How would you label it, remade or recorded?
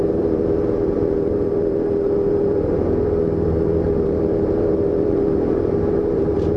remade